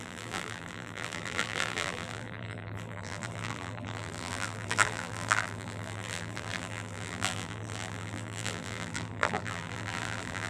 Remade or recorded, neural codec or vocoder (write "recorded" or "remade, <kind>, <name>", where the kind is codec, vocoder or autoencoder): remade, vocoder, BigVGAN v2